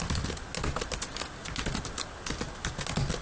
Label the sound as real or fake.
real